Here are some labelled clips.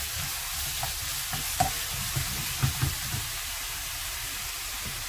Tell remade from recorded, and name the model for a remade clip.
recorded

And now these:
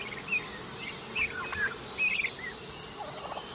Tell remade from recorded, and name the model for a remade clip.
recorded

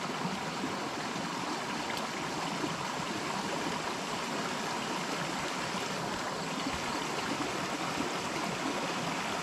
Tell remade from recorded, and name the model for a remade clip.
recorded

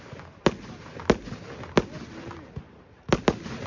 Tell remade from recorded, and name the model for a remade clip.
recorded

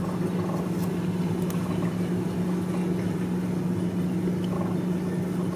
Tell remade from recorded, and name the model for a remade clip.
recorded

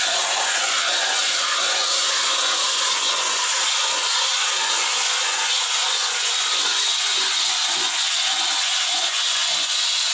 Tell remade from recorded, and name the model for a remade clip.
remade, vocoder, Vocos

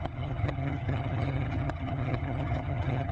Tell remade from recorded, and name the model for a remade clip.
remade, vocoder, HiFi-GAN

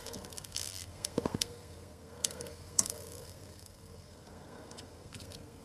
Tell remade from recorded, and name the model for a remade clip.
remade, codec, SNAC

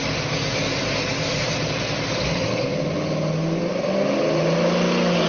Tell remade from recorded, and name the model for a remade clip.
recorded